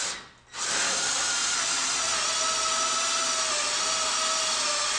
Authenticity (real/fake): real